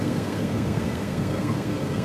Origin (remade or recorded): remade